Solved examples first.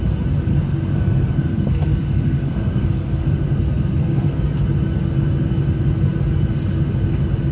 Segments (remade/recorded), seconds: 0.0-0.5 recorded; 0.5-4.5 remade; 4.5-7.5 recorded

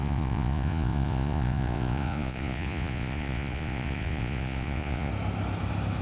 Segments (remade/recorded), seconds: 0.0-5.1 remade; 5.1-6.0 recorded

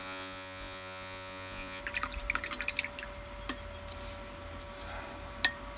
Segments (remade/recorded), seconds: 0.0-1.8 remade; 1.8-5.8 recorded

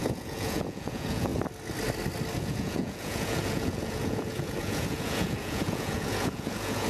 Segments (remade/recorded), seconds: 0.0-1.3 remade; 1.3-2.4 recorded; 2.4-6.9 remade

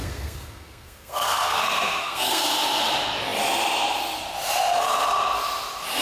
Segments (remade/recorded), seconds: 0.0-2.5 remade; 2.5-6.0 recorded